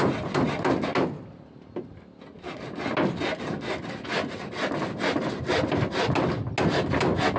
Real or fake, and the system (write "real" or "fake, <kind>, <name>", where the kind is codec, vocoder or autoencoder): real